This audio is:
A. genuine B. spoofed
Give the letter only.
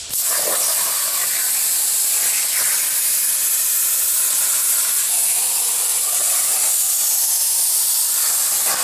A